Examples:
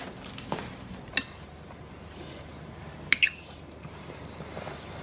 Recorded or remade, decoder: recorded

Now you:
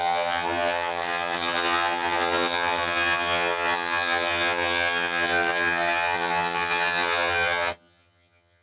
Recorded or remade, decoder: remade, vocoder, HiFi-GAN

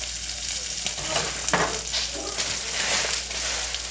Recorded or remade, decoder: recorded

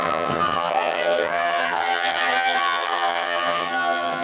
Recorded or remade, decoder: remade, vocoder, HiFi-GAN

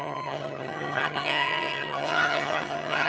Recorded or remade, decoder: remade, vocoder, HiFi-GAN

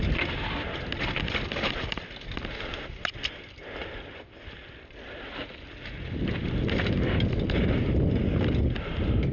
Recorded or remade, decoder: recorded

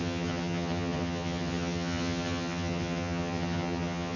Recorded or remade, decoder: remade, vocoder, HiFi-GAN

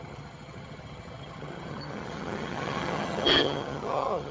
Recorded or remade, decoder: remade, vocoder, HiFi-GAN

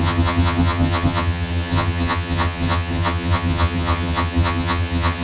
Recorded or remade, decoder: remade, vocoder, HiFi-GAN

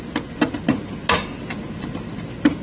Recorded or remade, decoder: recorded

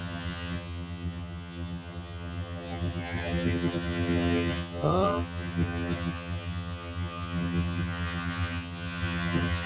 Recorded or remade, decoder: remade, vocoder, HiFi-GAN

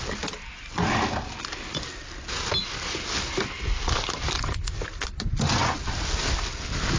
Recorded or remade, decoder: recorded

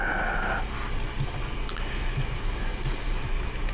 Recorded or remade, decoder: recorded